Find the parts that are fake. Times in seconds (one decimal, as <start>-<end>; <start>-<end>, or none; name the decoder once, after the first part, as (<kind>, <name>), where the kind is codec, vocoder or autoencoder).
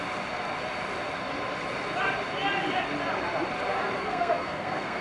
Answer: 4.0-5.0 (codec, SNAC)